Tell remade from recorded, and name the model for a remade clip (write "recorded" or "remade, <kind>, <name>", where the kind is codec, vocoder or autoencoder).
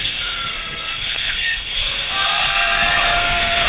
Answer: remade, codec, SNAC